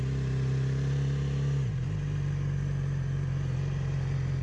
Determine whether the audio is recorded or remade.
recorded